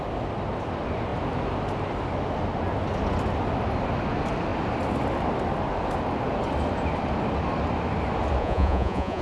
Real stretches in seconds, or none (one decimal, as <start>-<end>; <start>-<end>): 0.0-8.4